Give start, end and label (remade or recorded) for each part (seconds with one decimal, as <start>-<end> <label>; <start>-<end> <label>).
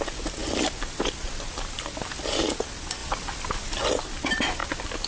0.0-5.1 recorded